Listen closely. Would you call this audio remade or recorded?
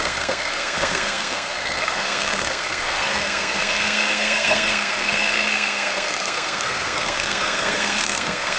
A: remade